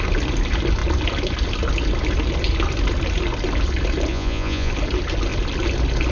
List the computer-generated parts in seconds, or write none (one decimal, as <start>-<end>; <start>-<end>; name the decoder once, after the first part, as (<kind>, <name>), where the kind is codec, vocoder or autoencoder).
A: 4.1-4.7 (vocoder, Vocos)